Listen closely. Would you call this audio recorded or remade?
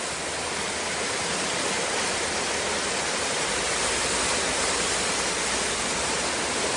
recorded